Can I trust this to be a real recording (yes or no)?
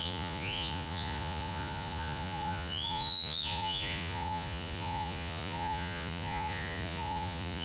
no